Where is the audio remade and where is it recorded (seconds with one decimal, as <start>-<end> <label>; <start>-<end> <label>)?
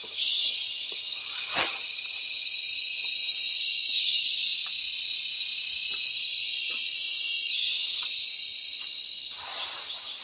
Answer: 0.0-4.4 remade; 4.4-6.1 recorded; 6.1-10.2 remade